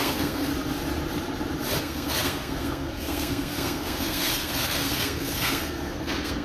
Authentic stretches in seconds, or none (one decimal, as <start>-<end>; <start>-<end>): 0.5-1.8